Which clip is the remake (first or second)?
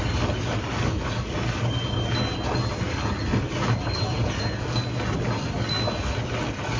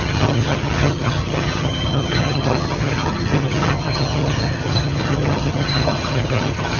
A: second